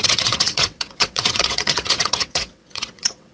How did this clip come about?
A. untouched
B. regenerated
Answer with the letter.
B